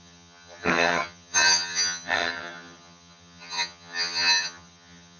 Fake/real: fake